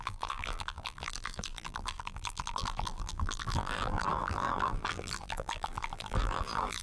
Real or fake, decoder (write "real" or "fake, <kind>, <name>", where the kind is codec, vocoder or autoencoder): fake, vocoder, BigVGAN v2